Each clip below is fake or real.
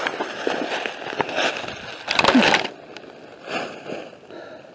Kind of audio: real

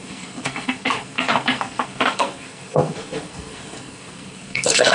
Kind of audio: fake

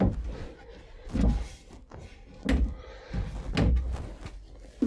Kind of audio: real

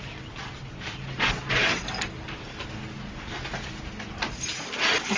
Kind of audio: real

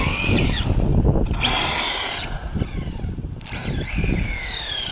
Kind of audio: real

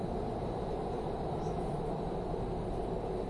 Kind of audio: real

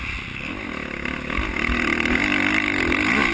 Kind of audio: real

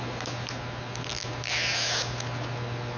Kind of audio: real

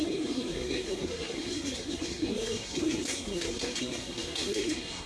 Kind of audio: fake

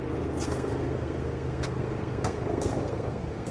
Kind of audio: fake